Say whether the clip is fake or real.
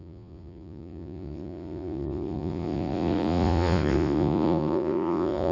fake